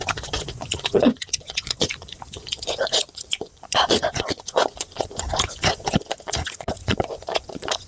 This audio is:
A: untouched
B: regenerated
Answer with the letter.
B